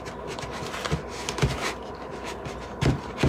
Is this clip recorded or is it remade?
recorded